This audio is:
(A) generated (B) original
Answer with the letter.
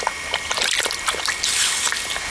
B